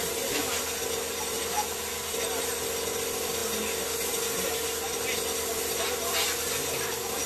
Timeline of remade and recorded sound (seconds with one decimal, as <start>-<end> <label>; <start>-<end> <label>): 0.0-7.3 recorded